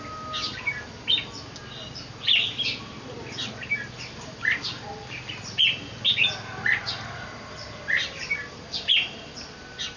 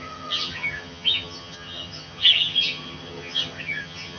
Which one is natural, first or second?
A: first